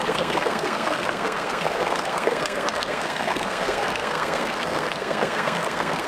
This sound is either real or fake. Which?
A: fake